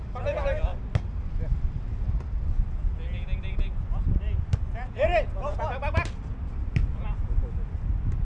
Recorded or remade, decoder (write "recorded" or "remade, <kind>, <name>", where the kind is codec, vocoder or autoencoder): recorded